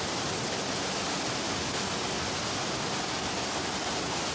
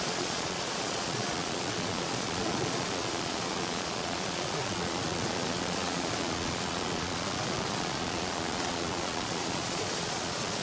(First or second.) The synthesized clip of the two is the second